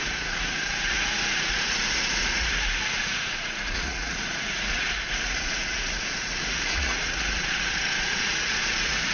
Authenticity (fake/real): fake